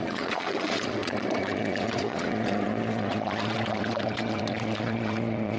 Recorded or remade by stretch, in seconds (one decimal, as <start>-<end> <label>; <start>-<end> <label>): 0.0-5.6 remade